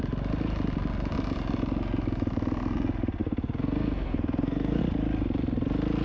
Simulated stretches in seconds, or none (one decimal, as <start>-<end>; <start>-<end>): 3.2-4.8